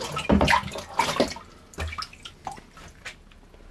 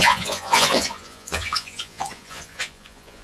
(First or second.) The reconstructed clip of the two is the second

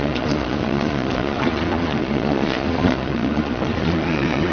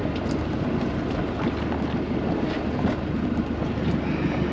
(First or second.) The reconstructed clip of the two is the first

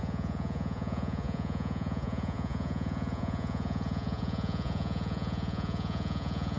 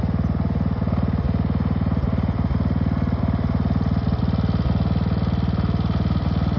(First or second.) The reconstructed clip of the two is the first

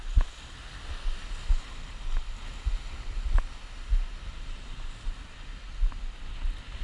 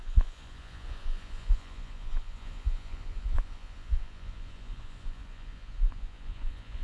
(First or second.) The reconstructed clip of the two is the second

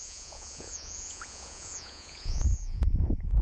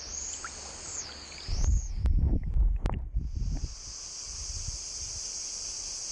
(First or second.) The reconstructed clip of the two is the first